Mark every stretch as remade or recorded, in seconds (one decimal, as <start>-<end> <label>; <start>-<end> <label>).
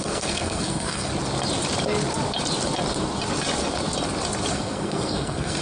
0.0-1.1 remade; 1.1-4.5 recorded; 4.5-5.6 remade